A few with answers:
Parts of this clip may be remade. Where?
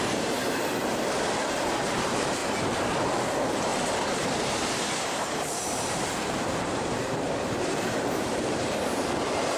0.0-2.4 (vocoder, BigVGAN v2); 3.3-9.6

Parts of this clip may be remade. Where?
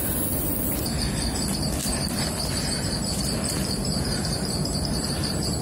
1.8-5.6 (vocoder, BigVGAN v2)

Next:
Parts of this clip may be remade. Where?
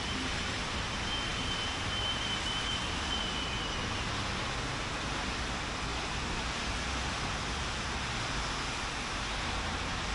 none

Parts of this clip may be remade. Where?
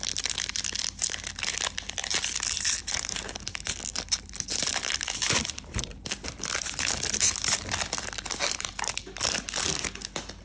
2.0-3.1 (vocoder, BigVGAN v2); 4.7-8.7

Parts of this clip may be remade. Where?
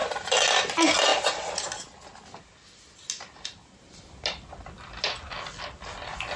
none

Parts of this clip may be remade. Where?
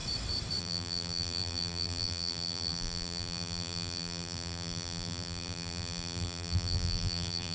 0.6-7.5 (vocoder, BigVGAN v2)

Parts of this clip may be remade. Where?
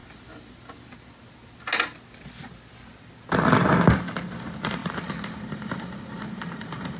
4.2-7.0 (vocoder, BigVGAN v2)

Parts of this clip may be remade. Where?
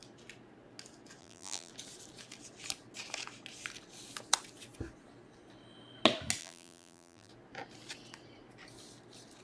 1.2-1.7 (vocoder, BigVGAN v2); 6.4-7.3